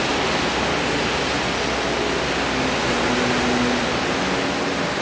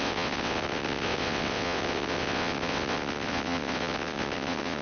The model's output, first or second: second